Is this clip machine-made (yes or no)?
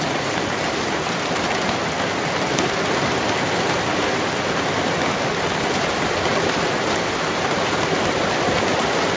no